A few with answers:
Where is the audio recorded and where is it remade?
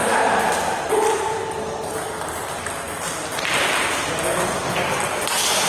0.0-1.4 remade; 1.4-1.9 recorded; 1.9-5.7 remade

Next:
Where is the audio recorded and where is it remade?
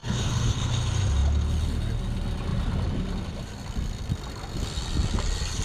0.0-0.7 remade; 0.7-5.6 recorded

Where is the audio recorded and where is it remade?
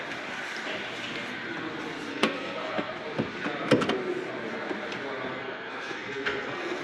0.0-2.1 recorded; 2.1-2.9 remade; 2.9-5.3 recorded; 5.3-6.8 remade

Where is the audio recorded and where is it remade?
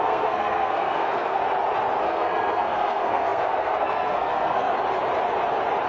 0.0-1.4 remade; 1.4-2.0 recorded; 2.0-4.7 remade; 4.7-5.9 recorded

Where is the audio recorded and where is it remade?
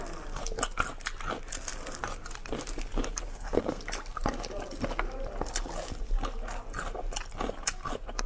0.0-3.3 recorded; 3.3-3.8 remade; 3.8-8.3 recorded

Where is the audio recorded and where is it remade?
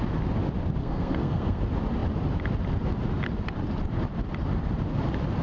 0.0-0.8 recorded; 0.8-1.6 remade; 1.6-5.4 recorded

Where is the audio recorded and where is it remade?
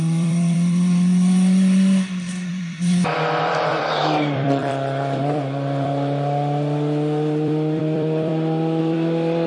0.0-8.3 remade; 8.3-8.8 recorded; 8.8-9.5 remade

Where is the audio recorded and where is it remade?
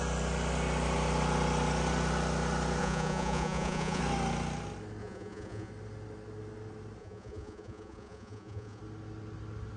0.0-2.8 recorded; 2.8-4.0 remade; 4.0-5.0 recorded; 5.0-5.7 remade; 5.7-7.0 recorded; 7.0-8.8 remade; 8.8-9.8 recorded